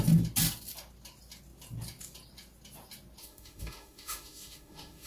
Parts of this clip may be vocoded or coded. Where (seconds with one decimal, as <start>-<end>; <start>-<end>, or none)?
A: 3.2-5.1